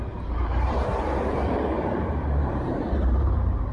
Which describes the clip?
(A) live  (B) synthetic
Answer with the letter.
B